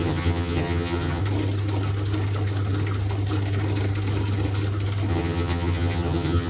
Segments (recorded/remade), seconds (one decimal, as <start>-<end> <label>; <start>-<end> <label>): 0.0-1.2 remade; 1.2-5.1 recorded; 5.1-6.5 remade